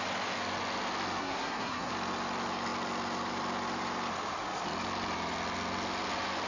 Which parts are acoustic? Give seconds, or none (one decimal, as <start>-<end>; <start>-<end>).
0.0-1.2; 1.9-6.5